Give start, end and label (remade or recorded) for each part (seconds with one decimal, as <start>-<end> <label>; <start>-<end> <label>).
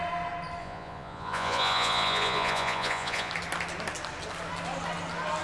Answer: 0.0-0.6 recorded; 0.6-3.3 remade; 3.3-5.4 recorded